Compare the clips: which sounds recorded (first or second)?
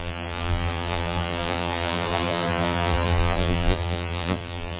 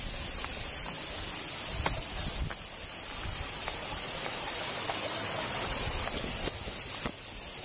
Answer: second